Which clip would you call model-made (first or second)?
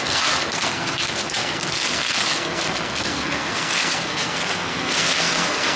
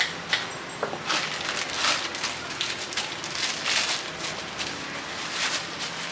first